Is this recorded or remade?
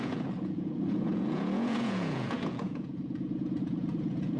remade